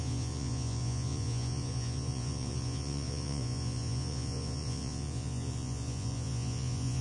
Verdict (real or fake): fake